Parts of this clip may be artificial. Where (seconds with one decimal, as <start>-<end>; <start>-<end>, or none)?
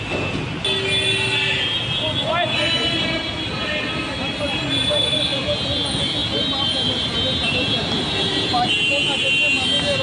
none